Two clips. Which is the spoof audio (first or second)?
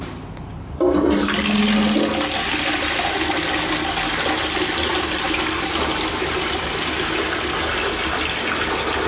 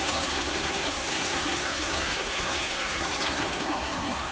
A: second